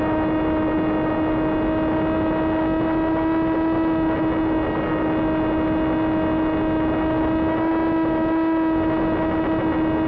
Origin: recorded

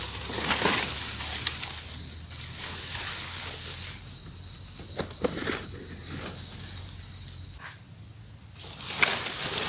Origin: recorded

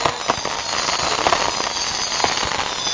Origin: recorded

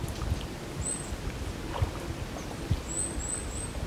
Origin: recorded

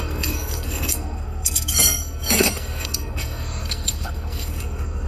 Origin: remade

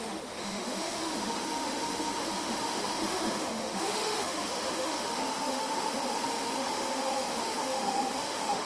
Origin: remade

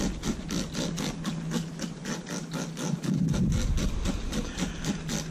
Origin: recorded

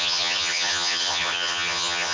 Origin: remade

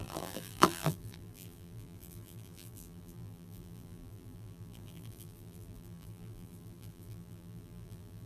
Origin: remade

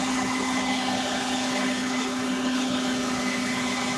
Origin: remade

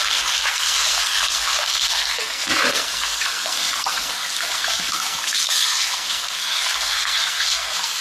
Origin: remade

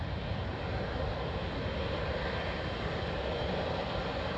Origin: recorded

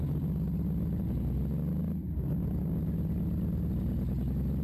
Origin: recorded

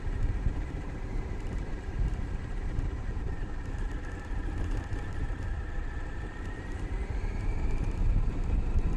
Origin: remade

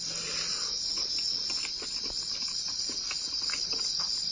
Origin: recorded